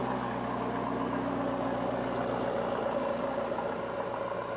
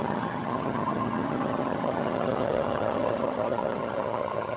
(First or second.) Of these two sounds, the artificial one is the second